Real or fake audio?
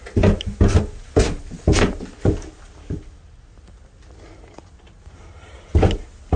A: real